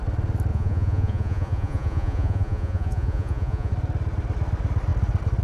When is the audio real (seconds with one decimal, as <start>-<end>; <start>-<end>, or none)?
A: 0.0-0.5; 3.7-5.4

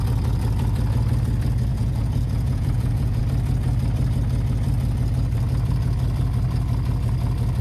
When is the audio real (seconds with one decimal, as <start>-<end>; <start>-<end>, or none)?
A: 0.0-1.7; 3.2-7.6

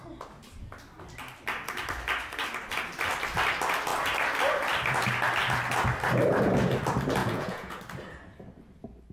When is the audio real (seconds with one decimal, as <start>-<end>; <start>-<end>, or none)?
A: 0.0-7.2; 7.8-9.1

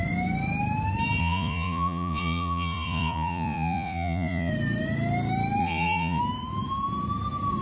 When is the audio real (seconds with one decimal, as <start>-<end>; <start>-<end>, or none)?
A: 0.0-1.2; 4.5-5.6; 6.2-7.6

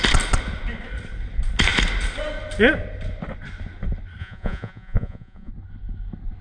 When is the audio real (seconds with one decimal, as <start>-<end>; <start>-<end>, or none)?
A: 0.0-4.2; 5.5-6.4

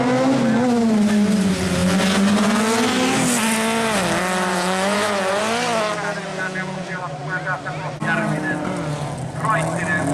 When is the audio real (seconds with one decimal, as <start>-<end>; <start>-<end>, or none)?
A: 0.0-4.5; 5.4-6.3; 7.0-10.1

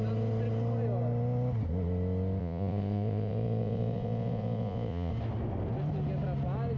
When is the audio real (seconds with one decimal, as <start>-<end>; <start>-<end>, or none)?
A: 0.0-2.4; 5.1-6.8